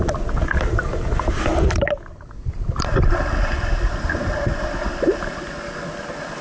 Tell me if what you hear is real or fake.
real